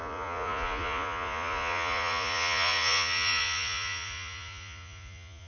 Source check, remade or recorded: remade